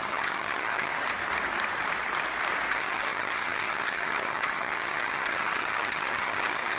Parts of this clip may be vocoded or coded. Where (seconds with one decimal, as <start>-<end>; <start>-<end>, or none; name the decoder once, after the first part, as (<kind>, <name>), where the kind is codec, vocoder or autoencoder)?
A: 0.0-0.9 (vocoder, HiFi-GAN); 2.7-6.8